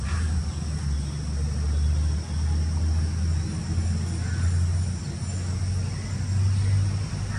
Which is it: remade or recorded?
recorded